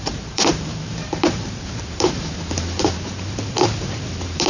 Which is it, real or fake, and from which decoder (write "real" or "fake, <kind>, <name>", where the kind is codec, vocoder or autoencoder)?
fake, vocoder, BigVGAN v2